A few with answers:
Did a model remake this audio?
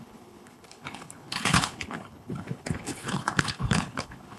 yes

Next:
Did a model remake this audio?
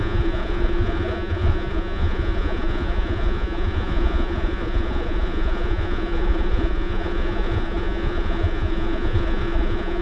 yes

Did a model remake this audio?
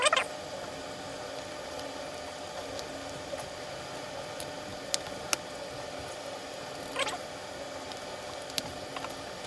no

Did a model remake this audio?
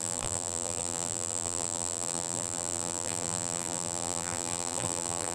yes